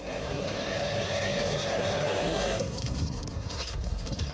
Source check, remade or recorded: remade